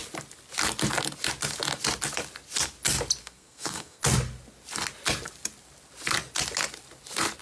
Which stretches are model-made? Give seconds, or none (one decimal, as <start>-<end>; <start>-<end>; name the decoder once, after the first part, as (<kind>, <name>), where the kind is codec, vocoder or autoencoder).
3.2-4.0 (codec, SNAC)